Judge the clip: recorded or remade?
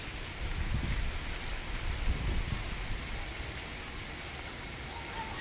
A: recorded